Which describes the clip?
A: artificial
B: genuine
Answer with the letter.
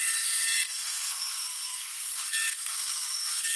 A